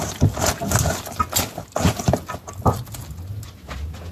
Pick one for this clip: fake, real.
real